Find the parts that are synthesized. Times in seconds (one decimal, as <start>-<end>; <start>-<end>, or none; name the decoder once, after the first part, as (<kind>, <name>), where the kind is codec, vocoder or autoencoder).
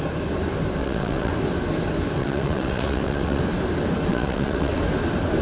0.8-1.3 (vocoder, WaveNeXt); 2.2-3.4; 4.1-4.8